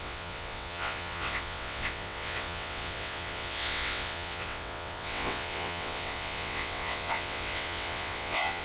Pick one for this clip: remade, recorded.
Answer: remade